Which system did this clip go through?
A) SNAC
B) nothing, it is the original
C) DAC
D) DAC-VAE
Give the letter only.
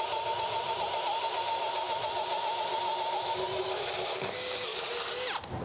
B